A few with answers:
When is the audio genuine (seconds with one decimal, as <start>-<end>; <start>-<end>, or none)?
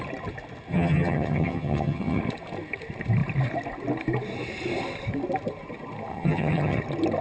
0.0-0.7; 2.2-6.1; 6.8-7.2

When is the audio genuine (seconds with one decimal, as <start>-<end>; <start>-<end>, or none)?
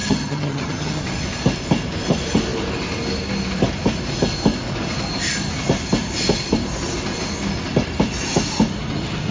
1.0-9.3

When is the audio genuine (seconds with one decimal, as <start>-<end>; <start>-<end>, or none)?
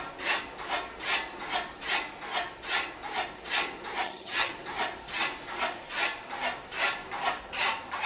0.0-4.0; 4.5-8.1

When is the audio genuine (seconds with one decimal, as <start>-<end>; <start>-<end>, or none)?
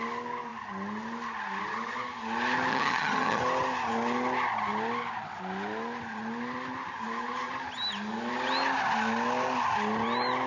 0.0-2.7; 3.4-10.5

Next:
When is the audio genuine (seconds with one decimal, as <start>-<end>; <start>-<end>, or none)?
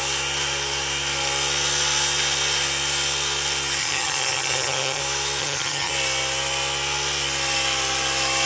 0.0-3.8; 5.0-5.4; 5.9-8.5